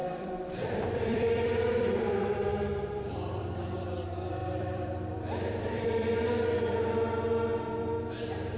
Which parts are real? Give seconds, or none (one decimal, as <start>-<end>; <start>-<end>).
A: 2.1-4.4; 6.2-8.6